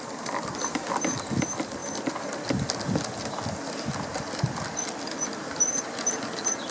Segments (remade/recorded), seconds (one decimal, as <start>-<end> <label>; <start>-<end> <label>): 0.0-6.7 recorded